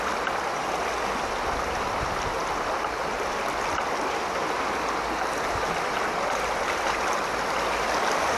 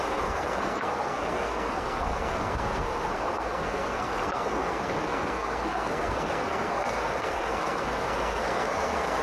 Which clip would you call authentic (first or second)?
first